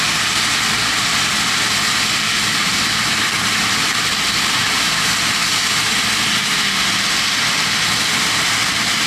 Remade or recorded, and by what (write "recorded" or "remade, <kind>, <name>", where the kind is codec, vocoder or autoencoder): recorded